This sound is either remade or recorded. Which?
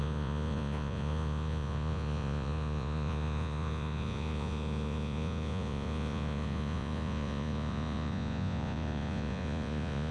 remade